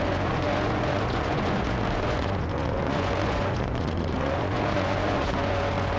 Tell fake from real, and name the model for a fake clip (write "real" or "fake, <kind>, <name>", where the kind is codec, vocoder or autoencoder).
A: fake, vocoder, Vocos